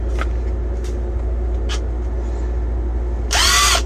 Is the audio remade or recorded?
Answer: recorded